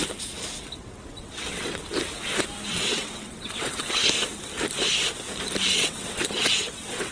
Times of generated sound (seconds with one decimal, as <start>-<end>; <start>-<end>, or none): 1.0-1.8; 2.7-4.0; 5.7-7.1